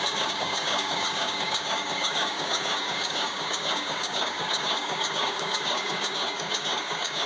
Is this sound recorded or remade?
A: remade